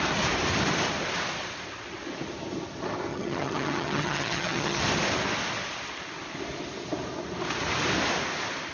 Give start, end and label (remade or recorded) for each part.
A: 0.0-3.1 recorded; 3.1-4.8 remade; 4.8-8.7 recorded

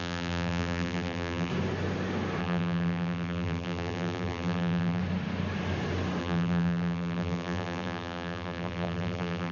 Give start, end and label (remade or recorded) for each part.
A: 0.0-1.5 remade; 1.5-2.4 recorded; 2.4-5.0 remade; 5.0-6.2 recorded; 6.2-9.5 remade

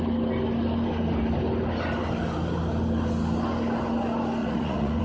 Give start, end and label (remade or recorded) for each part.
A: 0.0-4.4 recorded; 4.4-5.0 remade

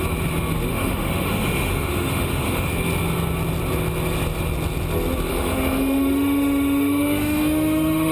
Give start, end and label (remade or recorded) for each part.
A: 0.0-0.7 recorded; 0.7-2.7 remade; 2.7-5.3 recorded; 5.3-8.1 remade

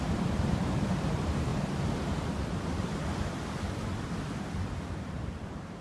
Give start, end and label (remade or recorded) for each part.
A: 0.0-1.5 remade; 1.5-5.0 recorded; 5.0-5.8 remade

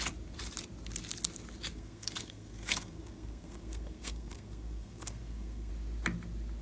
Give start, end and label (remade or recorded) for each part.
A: 0.0-1.7 recorded; 1.7-5.7 remade; 5.7-6.6 recorded

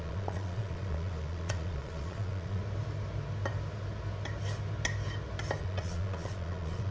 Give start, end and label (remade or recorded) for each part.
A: 0.0-2.6 remade; 2.6-5.6 recorded; 5.6-6.9 remade